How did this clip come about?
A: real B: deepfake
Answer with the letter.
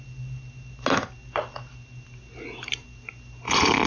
A